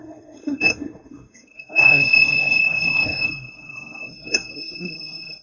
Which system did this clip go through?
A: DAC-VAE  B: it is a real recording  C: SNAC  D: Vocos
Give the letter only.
C